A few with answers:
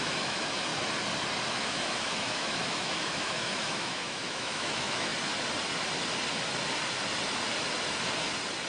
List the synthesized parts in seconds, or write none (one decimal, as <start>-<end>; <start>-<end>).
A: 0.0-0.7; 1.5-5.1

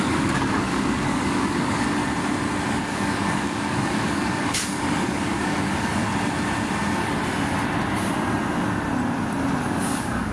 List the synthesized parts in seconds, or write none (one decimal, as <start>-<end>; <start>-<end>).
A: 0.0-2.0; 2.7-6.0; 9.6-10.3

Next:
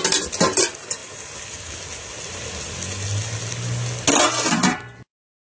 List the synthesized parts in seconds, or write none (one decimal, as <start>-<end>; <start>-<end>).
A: none

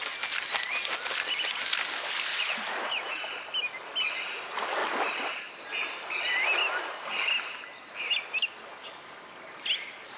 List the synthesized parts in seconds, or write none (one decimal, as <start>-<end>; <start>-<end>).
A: 2.3-3.2

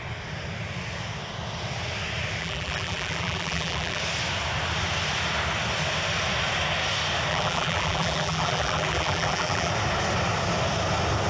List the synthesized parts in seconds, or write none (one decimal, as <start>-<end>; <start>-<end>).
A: 2.4-4.0; 7.3-9.7